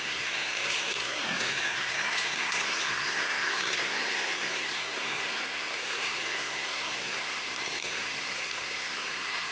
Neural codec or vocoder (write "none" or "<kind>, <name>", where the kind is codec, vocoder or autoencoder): codec, SNAC